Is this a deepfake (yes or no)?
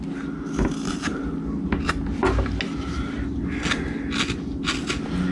no